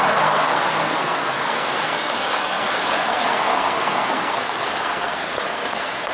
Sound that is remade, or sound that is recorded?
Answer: remade